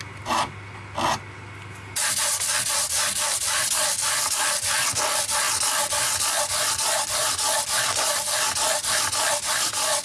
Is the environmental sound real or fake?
real